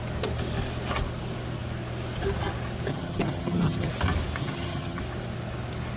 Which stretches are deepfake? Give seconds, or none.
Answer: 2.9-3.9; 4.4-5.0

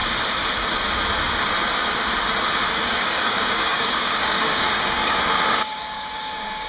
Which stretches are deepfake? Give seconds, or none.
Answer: 2.7-6.7

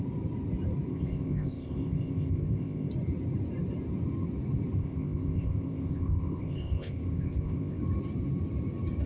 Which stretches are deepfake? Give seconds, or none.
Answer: 0.9-2.9; 4.8-7.8

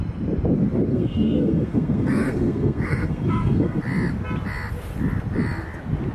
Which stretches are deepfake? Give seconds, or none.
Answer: 0.9-3.8

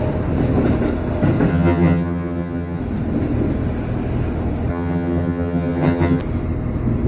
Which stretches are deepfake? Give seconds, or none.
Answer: 1.5-2.8; 4.7-6.2

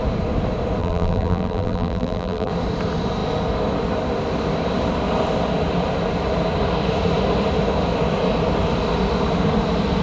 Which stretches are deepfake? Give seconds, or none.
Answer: 0.8-2.5

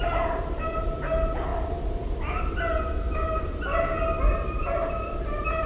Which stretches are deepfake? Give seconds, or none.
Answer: none

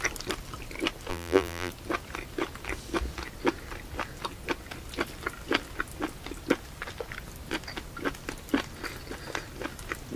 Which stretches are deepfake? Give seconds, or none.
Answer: 1.1-1.7